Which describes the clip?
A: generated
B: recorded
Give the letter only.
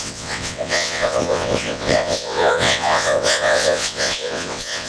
A